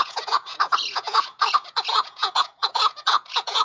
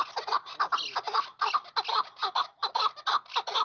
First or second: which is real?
second